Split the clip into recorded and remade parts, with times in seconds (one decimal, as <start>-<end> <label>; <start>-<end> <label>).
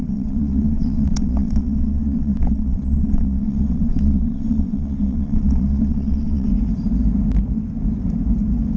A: 0.0-6.5 remade; 6.5-8.8 recorded